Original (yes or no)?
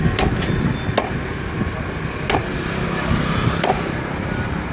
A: yes